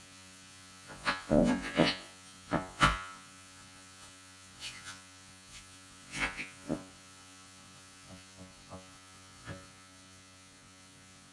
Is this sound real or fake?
fake